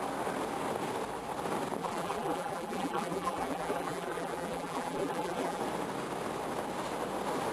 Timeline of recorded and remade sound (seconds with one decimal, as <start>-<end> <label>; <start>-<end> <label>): 0.0-1.8 recorded; 1.8-5.6 remade; 5.6-7.5 recorded